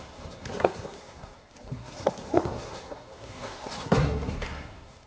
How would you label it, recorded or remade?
remade